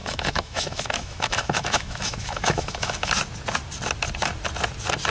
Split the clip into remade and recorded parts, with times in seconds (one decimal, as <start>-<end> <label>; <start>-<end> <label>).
0.0-3.1 remade; 3.1-5.1 recorded